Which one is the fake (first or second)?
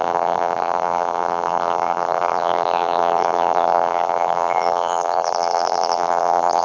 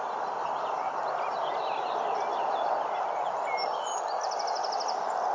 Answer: first